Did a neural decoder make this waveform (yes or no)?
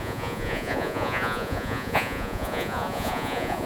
yes